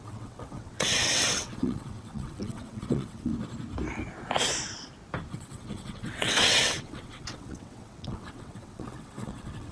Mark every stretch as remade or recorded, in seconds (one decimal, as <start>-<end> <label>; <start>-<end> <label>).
0.0-3.3 remade; 3.3-5.3 recorded; 5.3-9.7 remade